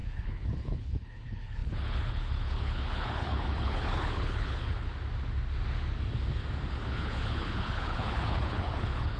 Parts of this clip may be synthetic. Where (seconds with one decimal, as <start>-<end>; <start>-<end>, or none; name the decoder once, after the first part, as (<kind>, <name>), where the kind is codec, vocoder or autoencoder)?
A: 0.0-4.9 (codec, HILCodec); 6.7-9.2